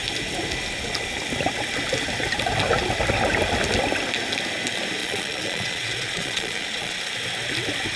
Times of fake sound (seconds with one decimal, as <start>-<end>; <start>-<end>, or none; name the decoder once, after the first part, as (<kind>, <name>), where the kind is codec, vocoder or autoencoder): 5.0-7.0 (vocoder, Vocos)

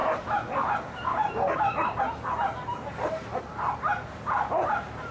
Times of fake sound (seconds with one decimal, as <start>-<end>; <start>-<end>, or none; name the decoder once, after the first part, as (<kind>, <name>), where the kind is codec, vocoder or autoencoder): none

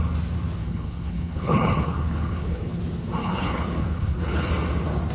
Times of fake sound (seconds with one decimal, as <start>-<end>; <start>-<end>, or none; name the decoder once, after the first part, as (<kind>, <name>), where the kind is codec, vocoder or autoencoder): 0.6-2.8 (codec, HILCodec); 3.2-4.5

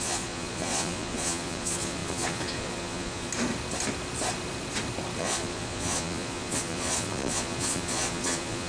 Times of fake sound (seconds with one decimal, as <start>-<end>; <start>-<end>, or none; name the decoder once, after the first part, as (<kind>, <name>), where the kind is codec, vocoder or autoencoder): 0.0-3.3 (vocoder, Vocos); 5.2-8.7

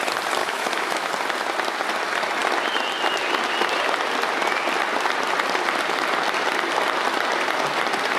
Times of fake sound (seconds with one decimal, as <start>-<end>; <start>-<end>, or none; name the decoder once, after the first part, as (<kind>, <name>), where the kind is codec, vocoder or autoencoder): 0.4-1.1 (autoencoder, DAC-VAE)

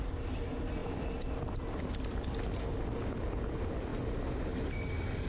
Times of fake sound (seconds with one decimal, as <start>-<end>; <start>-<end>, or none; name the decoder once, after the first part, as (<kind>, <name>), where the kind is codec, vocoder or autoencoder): 0.8-1.6 (vocoder, BigVGAN v2); 2.1-3.2; 3.9-4.4

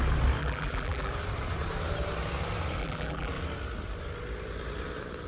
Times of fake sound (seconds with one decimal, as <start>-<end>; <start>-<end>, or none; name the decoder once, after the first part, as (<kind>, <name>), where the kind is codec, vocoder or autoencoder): 0.4-1.1 (vocoder, BigVGAN v2); 2.8-3.3

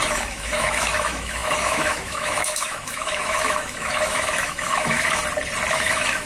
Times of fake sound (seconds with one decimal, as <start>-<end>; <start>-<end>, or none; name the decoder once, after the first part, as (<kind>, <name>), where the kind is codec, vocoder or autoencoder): 0.0-5.2 (autoencoder, DAC-VAE); 5.7-6.3